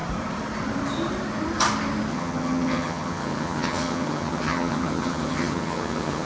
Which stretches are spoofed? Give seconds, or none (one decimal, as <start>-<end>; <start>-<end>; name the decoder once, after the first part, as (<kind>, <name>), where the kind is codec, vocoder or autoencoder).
2.1-6.3 (vocoder, HiFi-GAN)

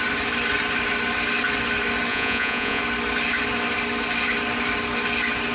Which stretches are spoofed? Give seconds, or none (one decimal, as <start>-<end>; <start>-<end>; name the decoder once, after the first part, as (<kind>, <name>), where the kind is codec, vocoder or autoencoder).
2.1-2.8 (vocoder, Vocos)

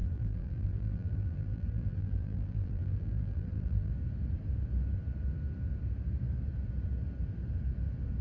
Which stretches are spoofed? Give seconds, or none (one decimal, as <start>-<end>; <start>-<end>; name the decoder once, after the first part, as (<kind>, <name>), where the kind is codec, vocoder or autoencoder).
0.0-3.9 (vocoder, BigVGAN v2)

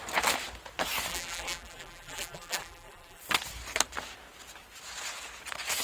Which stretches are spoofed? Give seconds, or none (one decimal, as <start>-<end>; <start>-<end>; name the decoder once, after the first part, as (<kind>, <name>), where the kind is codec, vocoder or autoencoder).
1.1-3.2 (vocoder, BigVGAN v2)

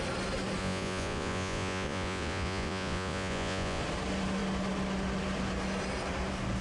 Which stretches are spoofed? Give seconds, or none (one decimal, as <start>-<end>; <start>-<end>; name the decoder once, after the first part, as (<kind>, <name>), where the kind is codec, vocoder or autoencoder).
0.6-3.8 (vocoder, Vocos)

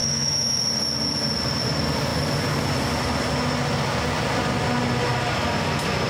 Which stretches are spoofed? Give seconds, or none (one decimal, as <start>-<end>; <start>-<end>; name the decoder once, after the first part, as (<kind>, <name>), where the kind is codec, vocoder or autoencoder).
0.0-0.6 (autoencoder, DAC-VAE)

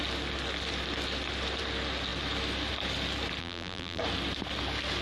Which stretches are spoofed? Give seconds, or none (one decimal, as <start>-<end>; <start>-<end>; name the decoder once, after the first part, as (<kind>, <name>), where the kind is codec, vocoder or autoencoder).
3.4-4.0 (vocoder, BigVGAN v2)